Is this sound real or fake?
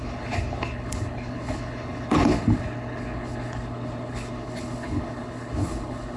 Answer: fake